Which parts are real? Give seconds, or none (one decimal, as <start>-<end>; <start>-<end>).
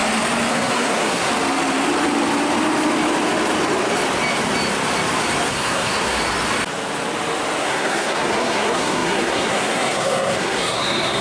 0.0-0.5; 1.3-5.5; 6.2-7.6